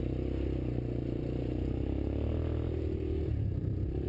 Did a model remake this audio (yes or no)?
yes